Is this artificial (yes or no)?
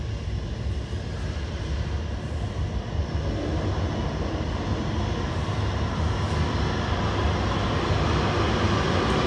no